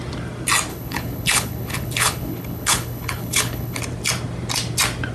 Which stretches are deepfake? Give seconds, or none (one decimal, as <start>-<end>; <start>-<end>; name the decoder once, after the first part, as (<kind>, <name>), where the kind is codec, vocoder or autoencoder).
0.7-3.8 (codec, HILCodec)